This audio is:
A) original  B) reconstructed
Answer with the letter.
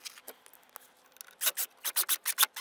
A